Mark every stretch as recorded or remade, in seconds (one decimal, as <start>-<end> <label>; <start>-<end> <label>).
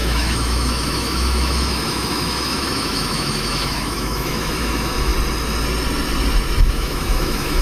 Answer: 0.0-5.1 remade; 5.1-6.7 recorded; 6.7-7.6 remade